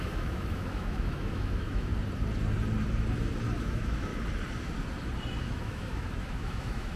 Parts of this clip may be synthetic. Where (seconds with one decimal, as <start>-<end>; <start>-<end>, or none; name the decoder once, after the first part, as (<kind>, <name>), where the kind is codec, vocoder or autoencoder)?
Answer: 0.0-1.9 (autoencoder, DAC-VAE); 3.6-4.1; 5.4-7.0